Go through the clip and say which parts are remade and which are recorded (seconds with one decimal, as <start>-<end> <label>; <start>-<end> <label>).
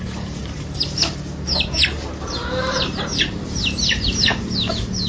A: 0.0-0.4 recorded; 0.4-1.1 remade; 1.1-3.1 recorded; 3.1-4.4 remade; 4.4-5.1 recorded